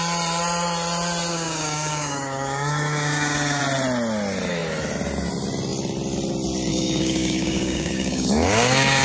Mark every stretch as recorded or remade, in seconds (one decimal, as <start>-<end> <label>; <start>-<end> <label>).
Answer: 0.0-1.3 recorded; 1.3-3.6 remade; 3.6-6.7 recorded; 6.7-9.0 remade